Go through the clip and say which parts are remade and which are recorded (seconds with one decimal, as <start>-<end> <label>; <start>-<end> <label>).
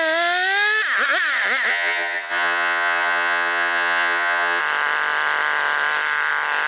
0.0-1.7 recorded; 1.7-4.6 remade; 4.6-6.7 recorded